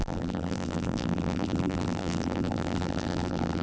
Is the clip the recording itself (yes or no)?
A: no